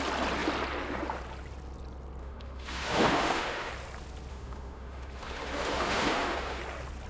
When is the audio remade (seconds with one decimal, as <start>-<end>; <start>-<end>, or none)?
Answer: 2.2-3.7; 4.3-6.6